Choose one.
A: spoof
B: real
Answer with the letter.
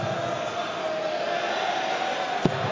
B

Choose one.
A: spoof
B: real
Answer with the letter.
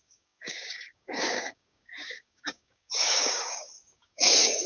A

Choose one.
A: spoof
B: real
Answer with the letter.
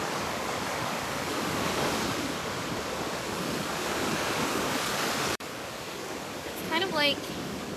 A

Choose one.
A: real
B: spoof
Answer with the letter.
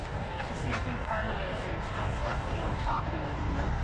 B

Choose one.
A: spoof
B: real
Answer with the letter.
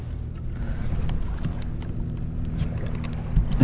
B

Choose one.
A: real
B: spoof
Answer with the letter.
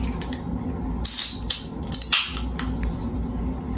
A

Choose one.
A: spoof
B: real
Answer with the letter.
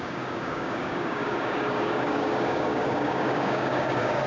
A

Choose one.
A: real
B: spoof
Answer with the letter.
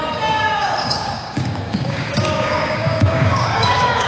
B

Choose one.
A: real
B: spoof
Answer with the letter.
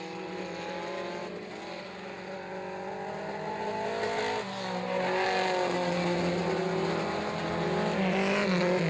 A